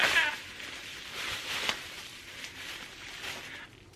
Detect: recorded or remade recorded